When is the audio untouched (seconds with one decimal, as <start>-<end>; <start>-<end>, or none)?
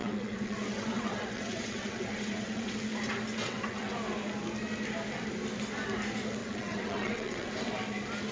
2.7-3.4; 3.9-6.4; 7.5-8.3